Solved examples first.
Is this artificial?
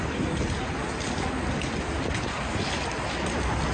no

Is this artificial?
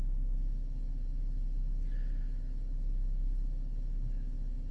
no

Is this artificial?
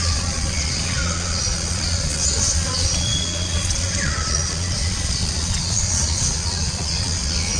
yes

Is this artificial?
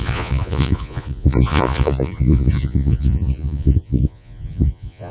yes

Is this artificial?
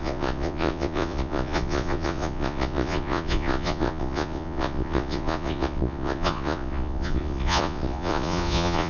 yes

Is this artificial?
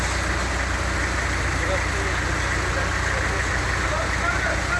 no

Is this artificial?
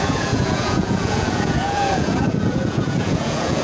yes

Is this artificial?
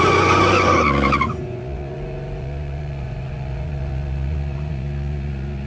yes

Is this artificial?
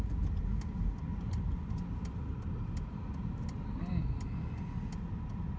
no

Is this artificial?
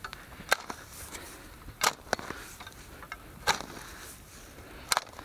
no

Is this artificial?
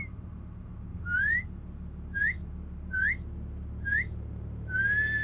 no